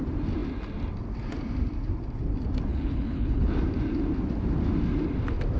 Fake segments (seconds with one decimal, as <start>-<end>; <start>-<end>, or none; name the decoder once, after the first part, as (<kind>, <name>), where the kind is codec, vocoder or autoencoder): 2.7-3.5 (codec, HILCodec)